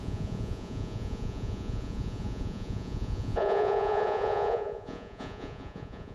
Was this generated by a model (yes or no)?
yes